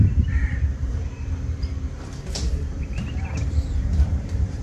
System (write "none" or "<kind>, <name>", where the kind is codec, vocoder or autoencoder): vocoder, BigVGAN v2